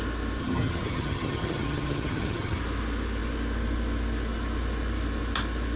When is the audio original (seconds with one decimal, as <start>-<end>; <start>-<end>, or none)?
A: 0.0-0.4; 2.6-5.8